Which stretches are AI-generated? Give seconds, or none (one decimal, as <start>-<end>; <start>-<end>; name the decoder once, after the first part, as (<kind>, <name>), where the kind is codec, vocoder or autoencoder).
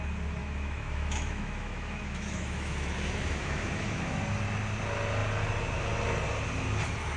0.4-4.2 (autoencoder, DAC-VAE)